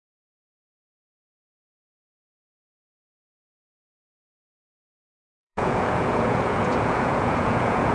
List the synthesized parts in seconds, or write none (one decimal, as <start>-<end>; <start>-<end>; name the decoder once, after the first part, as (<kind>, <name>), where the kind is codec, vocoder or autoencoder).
0.0-7.9 (vocoder, Vocos)